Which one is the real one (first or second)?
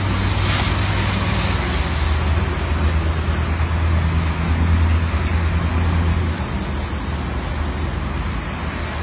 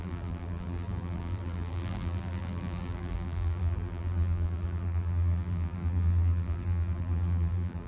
first